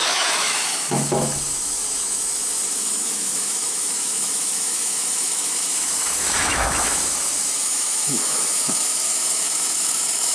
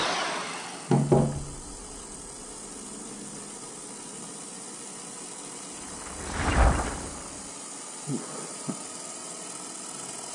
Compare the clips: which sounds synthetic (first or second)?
first